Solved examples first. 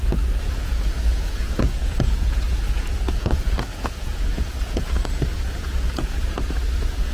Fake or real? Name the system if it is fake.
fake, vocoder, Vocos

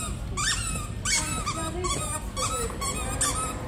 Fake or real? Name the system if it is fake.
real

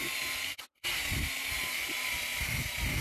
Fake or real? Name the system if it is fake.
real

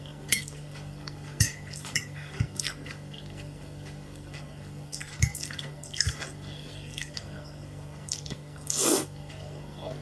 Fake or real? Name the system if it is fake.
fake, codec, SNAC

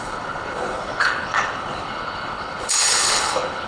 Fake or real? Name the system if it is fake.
fake, codec, HILCodec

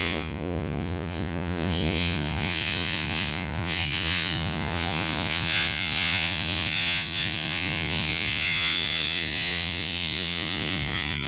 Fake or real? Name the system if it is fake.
fake, vocoder, Vocos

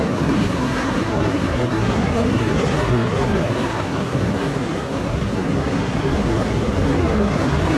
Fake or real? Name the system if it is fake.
fake, codec, SNAC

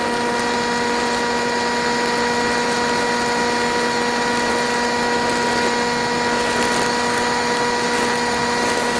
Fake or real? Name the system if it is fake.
real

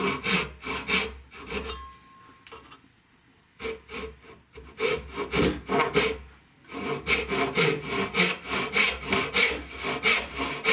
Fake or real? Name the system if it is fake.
real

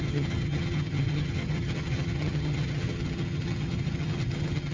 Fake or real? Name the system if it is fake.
fake, vocoder, HiFi-GAN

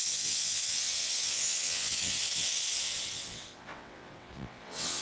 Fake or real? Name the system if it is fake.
fake, vocoder, WaveNeXt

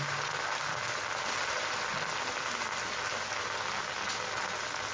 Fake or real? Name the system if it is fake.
real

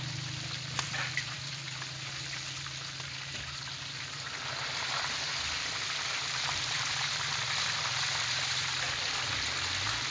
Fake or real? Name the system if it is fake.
fake, vocoder, BigVGAN v2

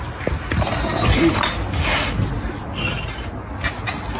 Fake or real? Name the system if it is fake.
real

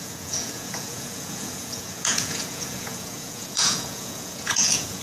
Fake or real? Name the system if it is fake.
fake, vocoder, Vocos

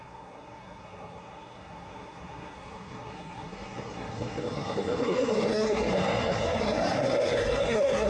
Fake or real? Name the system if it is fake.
fake, codec, SNAC